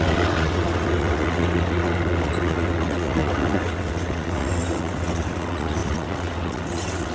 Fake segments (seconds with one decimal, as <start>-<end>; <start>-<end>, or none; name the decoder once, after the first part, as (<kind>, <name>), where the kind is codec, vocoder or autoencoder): 0.0-7.1 (vocoder, WaveNeXt)